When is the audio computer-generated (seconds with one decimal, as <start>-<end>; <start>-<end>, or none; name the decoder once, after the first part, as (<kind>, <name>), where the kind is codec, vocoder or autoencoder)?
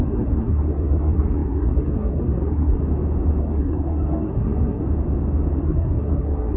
0.0-2.8 (codec, SNAC); 3.4-4.8; 5.6-6.6